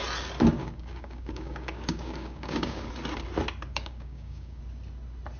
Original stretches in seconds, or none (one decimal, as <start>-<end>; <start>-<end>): 0.0-0.6; 2.9-3.7; 4.6-5.4